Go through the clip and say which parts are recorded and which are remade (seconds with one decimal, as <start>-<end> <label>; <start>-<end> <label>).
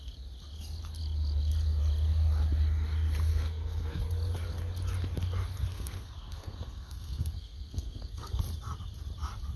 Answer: 0.0-3.3 recorded; 3.3-4.0 remade; 4.0-5.7 recorded; 5.7-8.4 remade; 8.4-9.6 recorded